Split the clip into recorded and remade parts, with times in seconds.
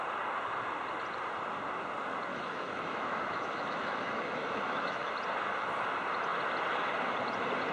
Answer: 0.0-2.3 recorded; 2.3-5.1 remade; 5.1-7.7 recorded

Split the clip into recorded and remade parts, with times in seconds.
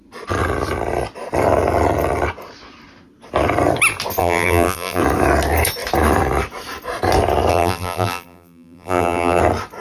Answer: 0.0-4.2 recorded; 4.2-5.0 remade; 5.0-7.5 recorded; 7.5-9.4 remade; 9.4-9.8 recorded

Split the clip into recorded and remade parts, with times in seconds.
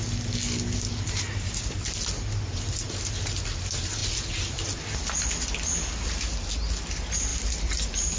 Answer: 0.0-8.2 recorded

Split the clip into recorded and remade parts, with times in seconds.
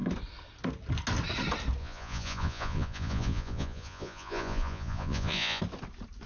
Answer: 0.0-1.8 recorded; 1.8-5.6 remade; 5.6-6.3 recorded